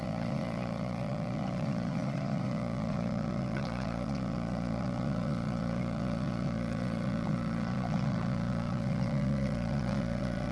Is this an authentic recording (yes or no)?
no